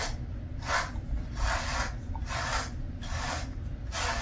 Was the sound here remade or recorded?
recorded